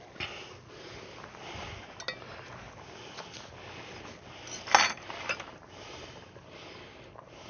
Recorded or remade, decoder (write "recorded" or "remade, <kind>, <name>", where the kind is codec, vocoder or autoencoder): recorded